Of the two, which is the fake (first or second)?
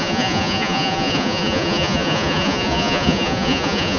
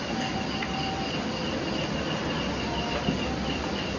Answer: first